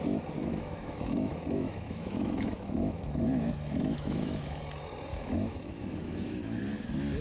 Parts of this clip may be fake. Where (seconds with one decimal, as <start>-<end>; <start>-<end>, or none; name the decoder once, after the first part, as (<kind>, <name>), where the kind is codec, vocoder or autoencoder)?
0.4-4.6 (autoencoder, DAC-VAE); 5.1-6.6